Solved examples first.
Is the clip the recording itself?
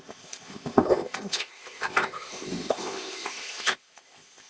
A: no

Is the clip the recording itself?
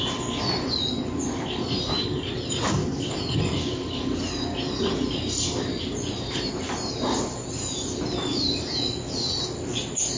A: yes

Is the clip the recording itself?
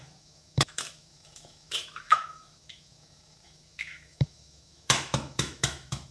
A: no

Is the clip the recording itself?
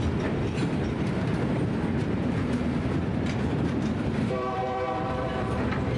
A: no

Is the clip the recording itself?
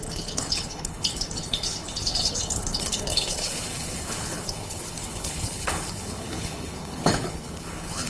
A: no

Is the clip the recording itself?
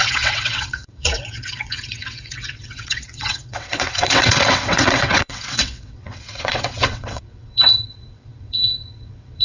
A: no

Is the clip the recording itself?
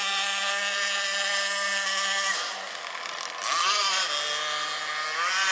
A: yes